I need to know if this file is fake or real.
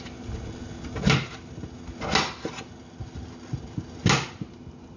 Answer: real